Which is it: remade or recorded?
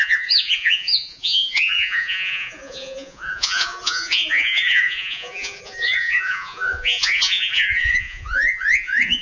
remade